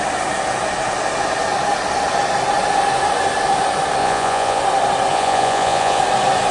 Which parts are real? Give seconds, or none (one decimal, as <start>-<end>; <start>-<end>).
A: 0.0-4.0; 4.6-5.1; 6.0-6.5